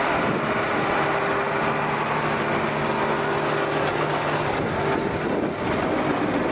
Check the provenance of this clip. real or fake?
real